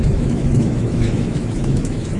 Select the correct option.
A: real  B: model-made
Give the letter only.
B